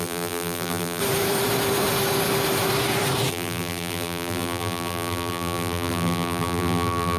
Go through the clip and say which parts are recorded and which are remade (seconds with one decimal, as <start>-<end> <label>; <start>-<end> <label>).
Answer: 0.0-1.0 remade; 1.0-3.3 recorded; 3.3-7.2 remade

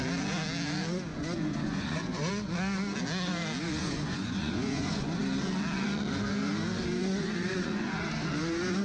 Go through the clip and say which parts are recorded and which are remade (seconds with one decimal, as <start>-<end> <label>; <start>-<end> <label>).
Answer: 0.0-1.1 recorded; 1.1-2.3 remade; 2.3-3.8 recorded; 3.8-5.2 remade; 5.2-7.0 recorded; 7.0-8.1 remade; 8.1-8.8 recorded

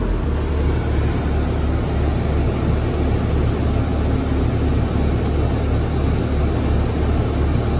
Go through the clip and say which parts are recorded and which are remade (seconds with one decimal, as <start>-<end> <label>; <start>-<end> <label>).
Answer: 0.0-7.8 recorded

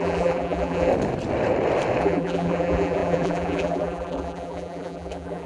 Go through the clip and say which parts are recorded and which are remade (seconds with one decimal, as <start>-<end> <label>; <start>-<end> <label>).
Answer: 0.0-0.9 remade; 0.9-2.0 recorded; 2.0-5.5 remade

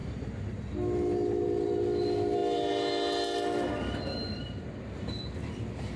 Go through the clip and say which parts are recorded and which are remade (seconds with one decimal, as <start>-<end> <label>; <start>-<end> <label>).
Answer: 0.0-6.0 recorded

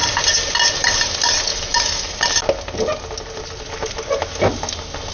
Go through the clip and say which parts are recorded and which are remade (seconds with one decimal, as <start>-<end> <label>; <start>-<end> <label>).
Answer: 0.0-1.5 recorded; 1.5-2.1 remade; 2.1-5.1 recorded

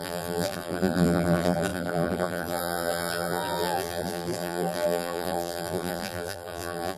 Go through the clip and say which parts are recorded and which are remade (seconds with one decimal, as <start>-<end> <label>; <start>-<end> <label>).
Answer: 0.0-7.0 remade